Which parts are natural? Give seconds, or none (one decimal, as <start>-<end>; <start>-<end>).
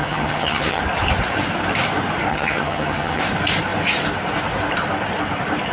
0.8-2.3; 3.2-5.7